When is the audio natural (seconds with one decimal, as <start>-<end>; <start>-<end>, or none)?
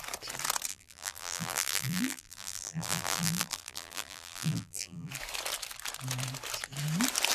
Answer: 0.0-0.7; 5.1-7.3